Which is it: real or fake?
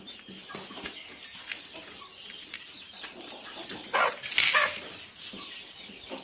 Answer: fake